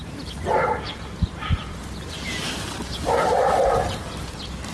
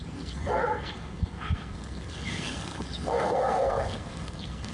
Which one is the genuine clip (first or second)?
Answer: first